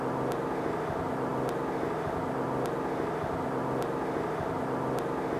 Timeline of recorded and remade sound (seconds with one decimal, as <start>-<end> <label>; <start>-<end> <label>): 0.0-5.4 recorded

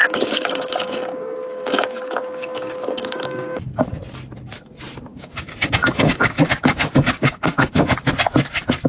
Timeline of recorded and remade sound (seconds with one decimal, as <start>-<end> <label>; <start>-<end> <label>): 0.0-3.6 remade; 3.6-5.1 recorded; 5.1-7.9 remade; 7.9-8.9 recorded

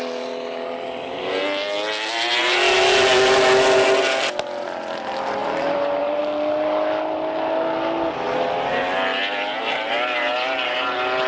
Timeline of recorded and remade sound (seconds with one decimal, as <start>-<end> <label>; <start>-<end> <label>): 0.0-5.4 recorded; 5.4-6.2 remade; 6.2-9.1 recorded; 9.1-9.9 remade; 9.9-11.3 recorded

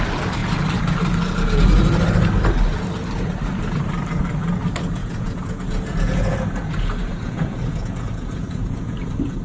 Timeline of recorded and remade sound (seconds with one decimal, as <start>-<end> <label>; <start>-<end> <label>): 0.0-5.0 recorded; 5.0-9.4 remade

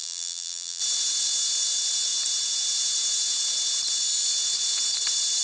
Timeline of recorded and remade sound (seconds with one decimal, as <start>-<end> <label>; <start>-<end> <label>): 0.0-0.8 remade; 0.8-5.4 recorded

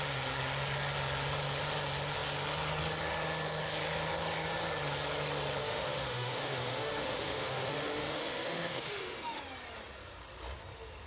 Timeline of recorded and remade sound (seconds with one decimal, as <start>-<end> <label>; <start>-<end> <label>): 0.0-5.6 recorded; 5.6-9.4 remade; 9.4-11.1 recorded

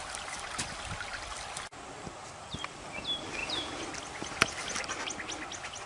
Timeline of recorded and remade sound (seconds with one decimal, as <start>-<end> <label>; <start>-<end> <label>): 0.0-5.9 recorded

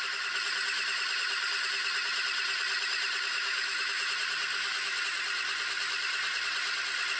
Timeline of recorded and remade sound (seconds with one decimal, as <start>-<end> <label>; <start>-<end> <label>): 0.0-3.3 recorded; 3.3-4.1 remade; 4.1-4.5 recorded; 4.5-5.0 remade; 5.0-7.2 recorded